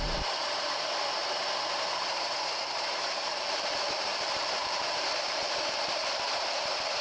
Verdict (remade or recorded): remade